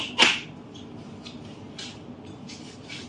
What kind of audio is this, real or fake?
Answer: real